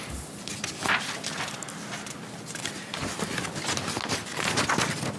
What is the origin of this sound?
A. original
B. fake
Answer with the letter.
A